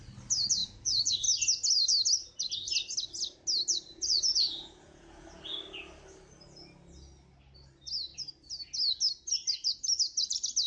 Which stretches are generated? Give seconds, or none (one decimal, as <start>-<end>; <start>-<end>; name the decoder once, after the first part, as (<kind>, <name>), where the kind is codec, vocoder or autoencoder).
0.6-1.1 (vocoder, Vocos); 3.9-5.4

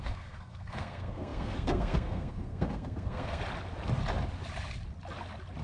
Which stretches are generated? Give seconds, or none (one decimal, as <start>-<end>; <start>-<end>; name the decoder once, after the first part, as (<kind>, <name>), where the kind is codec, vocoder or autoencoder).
0.0-3.4 (codec, SNAC)

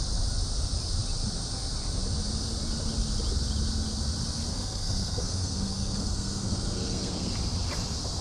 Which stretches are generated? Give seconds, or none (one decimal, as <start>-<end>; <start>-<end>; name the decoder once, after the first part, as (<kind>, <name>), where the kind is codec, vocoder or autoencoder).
4.5-7.3 (codec, SNAC)

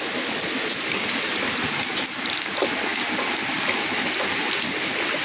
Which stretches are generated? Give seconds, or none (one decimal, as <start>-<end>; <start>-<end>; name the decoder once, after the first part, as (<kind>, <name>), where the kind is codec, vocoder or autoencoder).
none

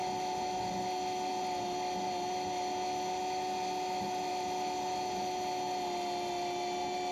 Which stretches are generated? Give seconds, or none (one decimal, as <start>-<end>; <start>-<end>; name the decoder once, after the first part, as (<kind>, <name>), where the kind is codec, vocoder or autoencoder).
none

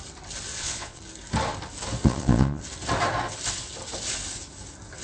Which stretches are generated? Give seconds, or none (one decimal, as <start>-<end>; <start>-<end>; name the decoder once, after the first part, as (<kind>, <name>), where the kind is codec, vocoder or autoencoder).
0.5-1.0 (vocoder, Vocos); 2.0-2.6

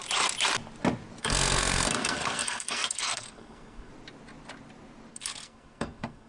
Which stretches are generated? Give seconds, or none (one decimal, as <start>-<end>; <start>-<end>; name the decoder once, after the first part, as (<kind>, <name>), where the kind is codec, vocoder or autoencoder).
1.2-3.9 (codec, SNAC); 5.1-6.3